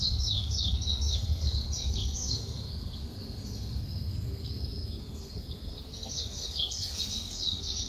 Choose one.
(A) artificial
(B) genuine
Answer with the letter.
A